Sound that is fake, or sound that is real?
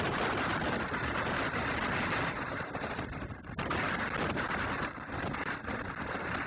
real